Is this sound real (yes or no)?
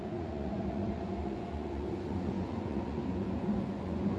no